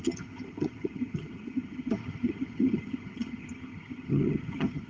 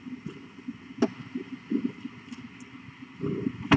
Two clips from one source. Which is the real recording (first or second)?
second